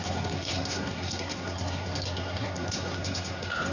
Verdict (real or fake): fake